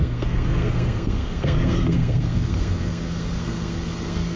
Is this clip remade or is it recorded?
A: remade